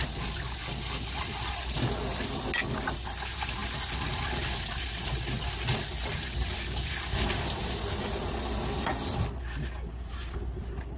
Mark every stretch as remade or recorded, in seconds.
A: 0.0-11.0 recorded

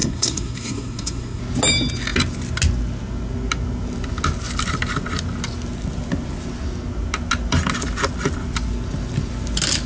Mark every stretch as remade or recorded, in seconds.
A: 0.0-1.4 remade; 1.4-9.9 recorded